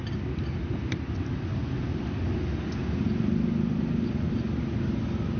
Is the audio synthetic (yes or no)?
no